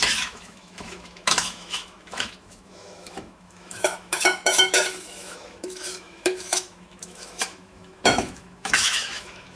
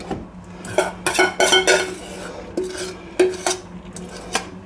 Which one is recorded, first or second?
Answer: second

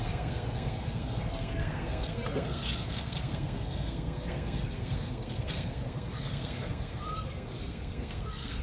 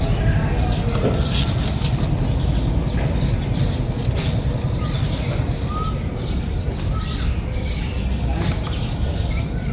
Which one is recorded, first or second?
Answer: second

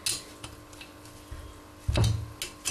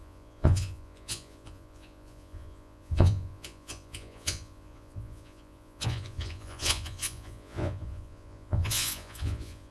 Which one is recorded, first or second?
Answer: first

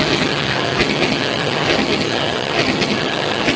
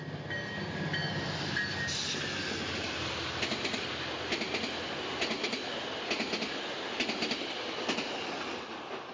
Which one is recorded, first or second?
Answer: second